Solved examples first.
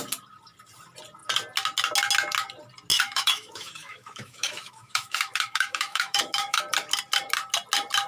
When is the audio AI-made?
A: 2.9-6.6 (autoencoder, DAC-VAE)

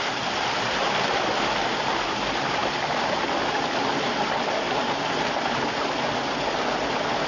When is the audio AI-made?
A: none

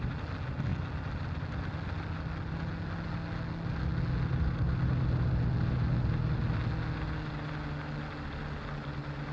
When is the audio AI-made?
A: none

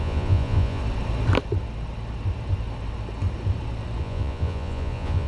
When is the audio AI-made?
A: 0.0-0.8 (vocoder, Vocos); 4.0-5.3

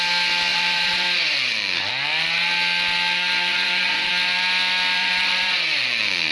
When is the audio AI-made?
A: 0.5-1.9 (vocoder, Vocos); 3.5-4.1; 5.0-6.3

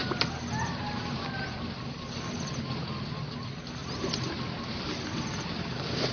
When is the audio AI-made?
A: none

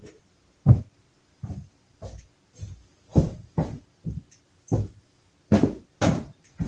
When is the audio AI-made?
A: 4.5-5.3 (autoencoder, DAC-VAE)